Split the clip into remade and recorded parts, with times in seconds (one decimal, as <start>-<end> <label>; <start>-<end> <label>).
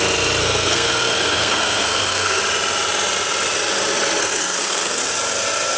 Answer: 0.0-0.4 recorded; 0.4-2.4 remade; 2.4-4.2 recorded; 4.2-5.0 remade; 5.0-5.8 recorded